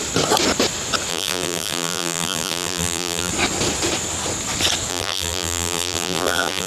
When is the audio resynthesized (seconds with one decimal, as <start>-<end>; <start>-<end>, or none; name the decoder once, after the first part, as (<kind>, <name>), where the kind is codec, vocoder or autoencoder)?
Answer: 1.1-3.3 (vocoder, BigVGAN v2); 4.9-6.7